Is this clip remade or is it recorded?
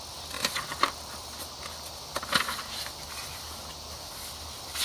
recorded